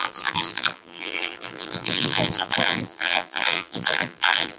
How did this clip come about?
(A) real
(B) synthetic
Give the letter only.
B